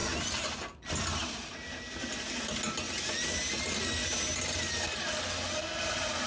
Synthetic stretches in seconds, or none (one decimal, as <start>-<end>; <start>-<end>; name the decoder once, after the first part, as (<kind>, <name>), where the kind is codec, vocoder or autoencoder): none

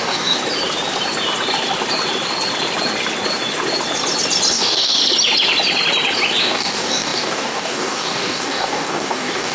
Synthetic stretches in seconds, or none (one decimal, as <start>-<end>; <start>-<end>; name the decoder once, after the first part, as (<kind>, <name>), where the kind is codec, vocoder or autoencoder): 0.0-0.4 (codec, DAC); 4.5-5.0; 6.4-9.5

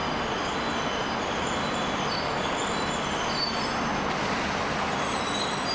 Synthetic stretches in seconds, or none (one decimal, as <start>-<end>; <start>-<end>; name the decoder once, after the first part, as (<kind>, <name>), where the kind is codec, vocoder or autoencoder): none

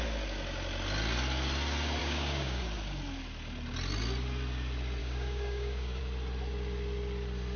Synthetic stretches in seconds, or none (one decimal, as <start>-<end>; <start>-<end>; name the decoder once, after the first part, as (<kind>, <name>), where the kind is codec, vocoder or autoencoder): 2.0-2.6 (codec, DAC); 5.0-6.0

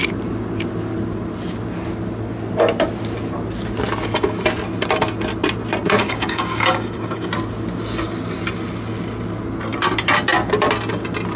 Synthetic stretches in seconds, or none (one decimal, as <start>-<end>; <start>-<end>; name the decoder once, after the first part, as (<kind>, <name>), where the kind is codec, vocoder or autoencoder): 6.0-7.3 (codec, DAC)

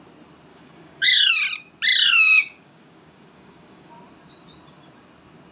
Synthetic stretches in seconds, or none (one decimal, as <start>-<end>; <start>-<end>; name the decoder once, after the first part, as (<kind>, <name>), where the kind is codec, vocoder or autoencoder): 0.5-1.3 (codec, DAC); 2.0-3.9

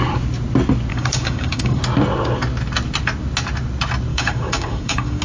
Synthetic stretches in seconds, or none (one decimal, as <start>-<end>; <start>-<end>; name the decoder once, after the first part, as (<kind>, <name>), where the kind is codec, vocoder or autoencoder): 0.9-1.8 (codec, DAC); 4.1-5.2

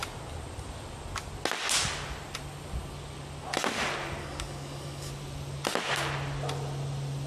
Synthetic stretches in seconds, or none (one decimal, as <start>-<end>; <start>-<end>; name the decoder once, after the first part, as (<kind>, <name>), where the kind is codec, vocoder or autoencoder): 4.2-5.1 (codec, DAC)